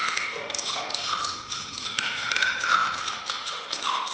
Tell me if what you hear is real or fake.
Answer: fake